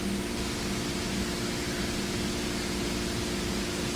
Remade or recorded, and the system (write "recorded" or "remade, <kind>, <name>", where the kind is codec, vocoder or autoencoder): recorded